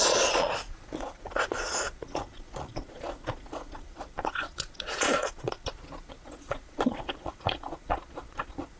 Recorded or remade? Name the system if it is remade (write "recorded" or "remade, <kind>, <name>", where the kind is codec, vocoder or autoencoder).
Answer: remade, vocoder, Vocos